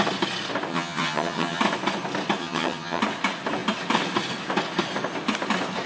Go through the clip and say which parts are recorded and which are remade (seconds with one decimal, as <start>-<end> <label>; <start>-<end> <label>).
0.0-0.7 recorded; 0.7-1.6 remade; 1.6-2.4 recorded; 2.4-3.0 remade; 3.0-5.9 recorded